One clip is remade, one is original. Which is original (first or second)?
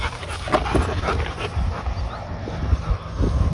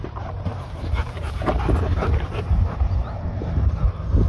first